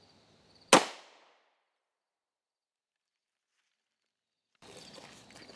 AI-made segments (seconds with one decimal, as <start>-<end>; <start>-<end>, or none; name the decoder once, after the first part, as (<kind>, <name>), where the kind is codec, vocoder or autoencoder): none